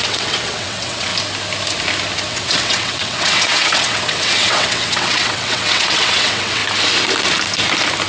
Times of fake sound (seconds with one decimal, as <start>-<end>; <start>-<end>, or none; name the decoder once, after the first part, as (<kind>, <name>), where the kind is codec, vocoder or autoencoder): 0.0-1.1 (vocoder, WaveNeXt); 2.3-6.6